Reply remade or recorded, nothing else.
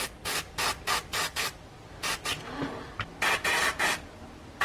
recorded